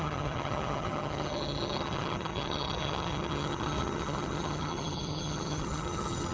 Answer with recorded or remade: remade